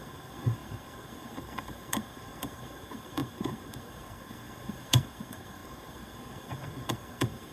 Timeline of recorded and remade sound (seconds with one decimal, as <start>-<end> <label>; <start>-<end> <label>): 0.0-7.5 remade